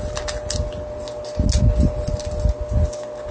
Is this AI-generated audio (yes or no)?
no